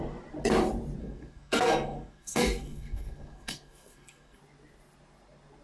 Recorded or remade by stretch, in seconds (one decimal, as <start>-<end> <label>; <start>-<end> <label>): 0.0-1.0 recorded; 1.0-4.4 remade; 4.4-5.6 recorded